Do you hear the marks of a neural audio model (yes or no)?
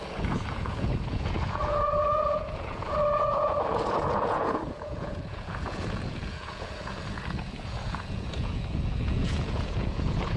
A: yes